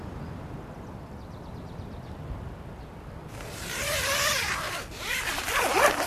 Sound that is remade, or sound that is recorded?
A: remade